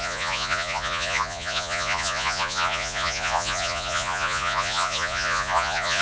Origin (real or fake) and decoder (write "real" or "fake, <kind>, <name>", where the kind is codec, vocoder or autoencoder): fake, vocoder, Vocos